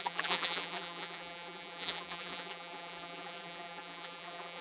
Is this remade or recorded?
remade